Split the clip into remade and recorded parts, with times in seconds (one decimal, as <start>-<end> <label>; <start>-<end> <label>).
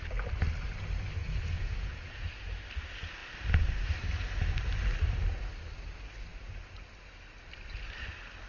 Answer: 0.0-1.2 recorded; 1.2-2.5 remade; 2.5-8.5 recorded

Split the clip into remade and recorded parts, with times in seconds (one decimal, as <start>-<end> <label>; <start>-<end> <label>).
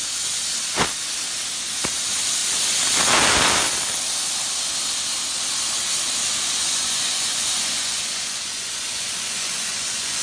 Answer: 0.0-6.6 recorded; 6.6-10.2 remade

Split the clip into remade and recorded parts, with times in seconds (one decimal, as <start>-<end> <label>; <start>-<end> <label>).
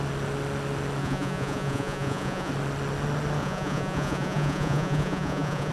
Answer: 0.0-1.0 recorded; 1.0-2.5 remade; 2.5-3.4 recorded; 3.4-5.7 remade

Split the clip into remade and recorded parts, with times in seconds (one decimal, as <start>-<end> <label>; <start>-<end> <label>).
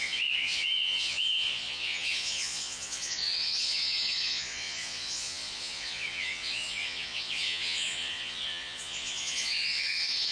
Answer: 0.0-10.3 remade